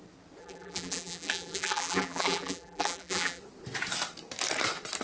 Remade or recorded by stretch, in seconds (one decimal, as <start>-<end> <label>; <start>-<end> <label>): 0.0-0.4 recorded; 0.4-3.4 remade; 3.4-5.0 recorded